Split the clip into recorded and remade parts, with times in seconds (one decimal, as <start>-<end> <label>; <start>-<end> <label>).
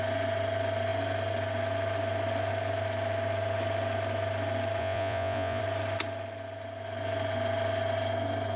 0.0-4.8 recorded; 4.8-5.6 remade; 5.6-8.6 recorded